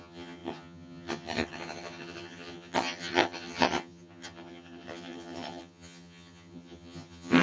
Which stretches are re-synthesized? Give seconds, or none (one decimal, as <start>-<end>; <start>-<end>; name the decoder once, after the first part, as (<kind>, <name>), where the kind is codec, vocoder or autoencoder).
0.0-7.4 (vocoder, HiFi-GAN)